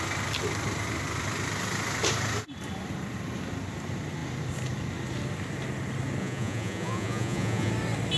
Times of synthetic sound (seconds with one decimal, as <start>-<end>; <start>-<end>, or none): 6.2-7.7